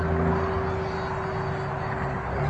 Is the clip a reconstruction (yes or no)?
no